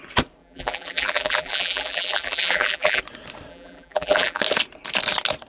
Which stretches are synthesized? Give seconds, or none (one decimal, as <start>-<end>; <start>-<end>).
0.4-3.0; 3.5-4.4